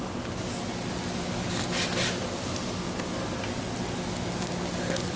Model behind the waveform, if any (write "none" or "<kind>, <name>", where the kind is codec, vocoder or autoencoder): none